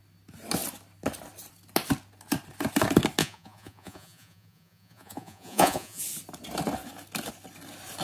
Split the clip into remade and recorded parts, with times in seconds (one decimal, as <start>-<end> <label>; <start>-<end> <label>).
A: 0.0-3.2 recorded; 3.2-6.0 remade; 6.0-8.0 recorded